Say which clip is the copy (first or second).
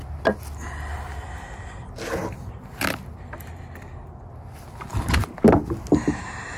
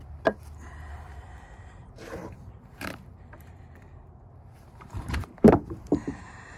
second